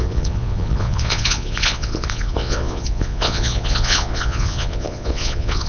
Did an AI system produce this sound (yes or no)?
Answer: yes